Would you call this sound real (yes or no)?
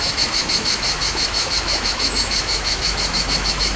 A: no